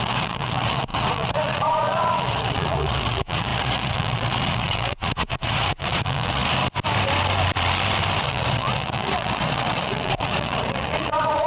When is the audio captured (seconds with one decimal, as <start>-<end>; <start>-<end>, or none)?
6.4-8.2